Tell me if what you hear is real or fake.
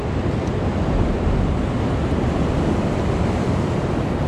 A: real